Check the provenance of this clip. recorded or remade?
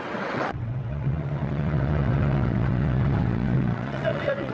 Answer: remade